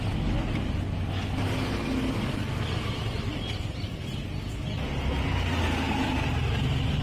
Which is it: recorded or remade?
recorded